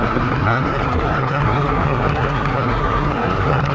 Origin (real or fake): fake